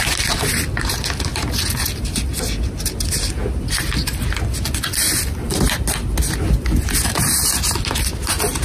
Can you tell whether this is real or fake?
real